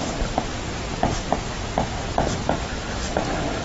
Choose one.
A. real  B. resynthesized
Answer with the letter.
A